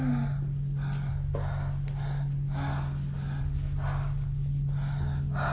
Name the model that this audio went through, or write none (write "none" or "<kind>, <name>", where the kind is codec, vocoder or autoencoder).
none